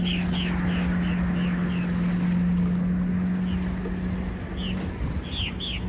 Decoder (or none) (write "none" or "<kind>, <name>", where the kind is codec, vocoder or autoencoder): none